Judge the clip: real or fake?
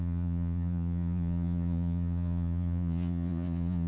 fake